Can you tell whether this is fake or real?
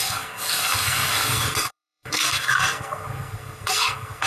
fake